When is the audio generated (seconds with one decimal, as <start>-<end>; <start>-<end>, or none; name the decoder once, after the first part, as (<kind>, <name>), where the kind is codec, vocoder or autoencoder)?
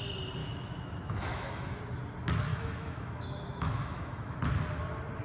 0.4-1.8 (autoencoder, DAC-VAE); 2.5-4.4